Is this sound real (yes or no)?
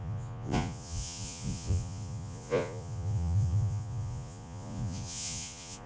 no